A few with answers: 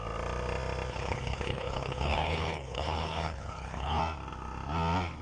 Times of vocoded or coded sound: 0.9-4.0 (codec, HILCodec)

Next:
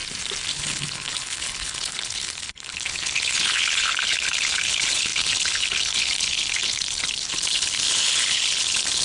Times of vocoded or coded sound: 0.5-9.0 (codec, HILCodec)

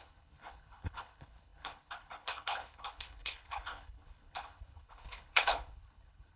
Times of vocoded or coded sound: 0.0-6.4 (codec, HILCodec)